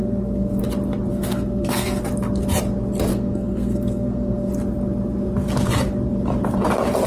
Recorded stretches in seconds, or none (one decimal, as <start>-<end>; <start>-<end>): 0.6-1.1; 2.0-3.1; 4.5-7.1